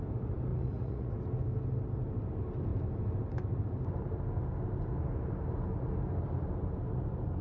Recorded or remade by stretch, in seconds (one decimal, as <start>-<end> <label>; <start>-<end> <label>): 0.0-0.5 recorded; 0.5-1.1 remade; 1.1-7.4 recorded